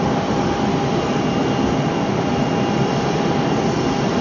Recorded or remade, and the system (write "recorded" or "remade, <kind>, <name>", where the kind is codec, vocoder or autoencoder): recorded